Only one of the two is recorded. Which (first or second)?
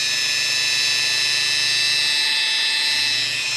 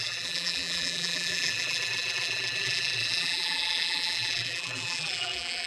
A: first